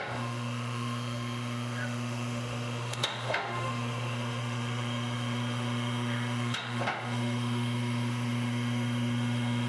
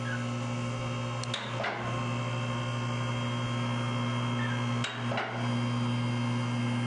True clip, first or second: second